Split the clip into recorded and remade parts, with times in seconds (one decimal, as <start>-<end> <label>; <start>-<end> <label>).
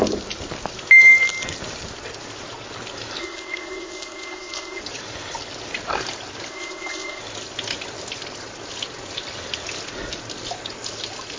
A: 0.0-3.2 recorded; 3.2-4.8 remade; 4.8-6.5 recorded; 6.5-7.2 remade; 7.2-11.4 recorded